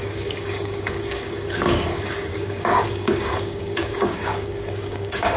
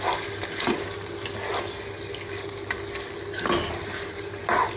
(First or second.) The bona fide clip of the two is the second